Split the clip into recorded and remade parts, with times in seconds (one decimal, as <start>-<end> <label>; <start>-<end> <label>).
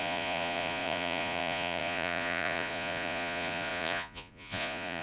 0.0-5.0 remade